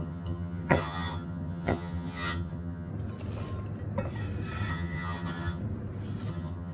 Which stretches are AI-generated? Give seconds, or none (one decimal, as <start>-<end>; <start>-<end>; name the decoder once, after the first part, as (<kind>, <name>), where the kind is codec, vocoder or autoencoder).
0.0-2.9 (vocoder, HiFi-GAN); 4.7-5.6; 6.3-6.7